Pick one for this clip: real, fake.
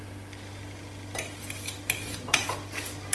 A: real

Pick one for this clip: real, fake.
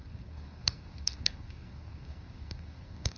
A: fake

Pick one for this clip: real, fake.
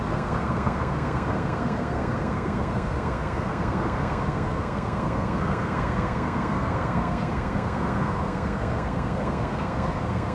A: fake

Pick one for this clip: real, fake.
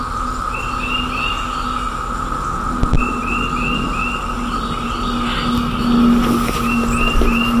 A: real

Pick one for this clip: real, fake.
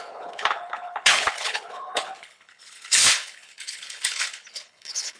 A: fake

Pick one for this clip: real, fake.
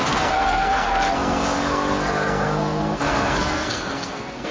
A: fake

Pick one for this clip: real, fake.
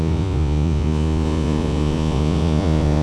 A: fake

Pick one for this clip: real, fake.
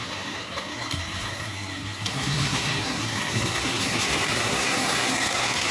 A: fake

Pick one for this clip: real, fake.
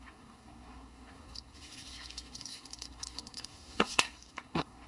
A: fake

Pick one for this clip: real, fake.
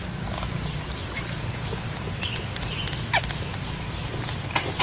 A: real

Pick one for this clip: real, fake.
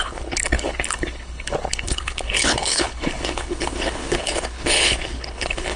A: fake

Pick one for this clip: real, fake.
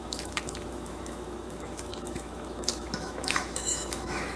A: fake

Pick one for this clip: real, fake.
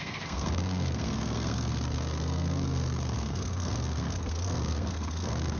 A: fake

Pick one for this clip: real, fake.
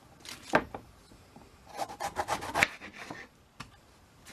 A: real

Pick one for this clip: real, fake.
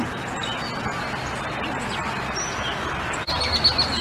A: real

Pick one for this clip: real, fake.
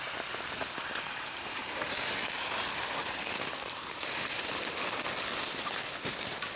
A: real